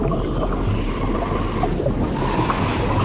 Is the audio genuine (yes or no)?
yes